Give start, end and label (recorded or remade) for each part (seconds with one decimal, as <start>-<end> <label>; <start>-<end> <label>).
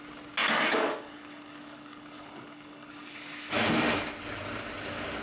0.0-0.4 recorded; 0.4-3.5 remade; 3.5-5.2 recorded